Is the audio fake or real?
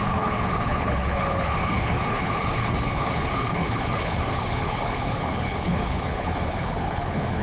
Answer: fake